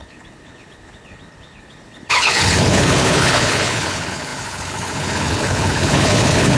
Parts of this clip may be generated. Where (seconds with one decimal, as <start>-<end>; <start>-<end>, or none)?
0.0-6.6